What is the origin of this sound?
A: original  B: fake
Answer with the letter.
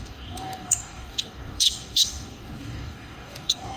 B